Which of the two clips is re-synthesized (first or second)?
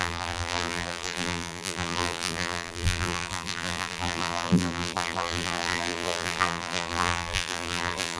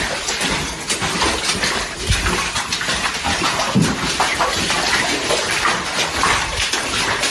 first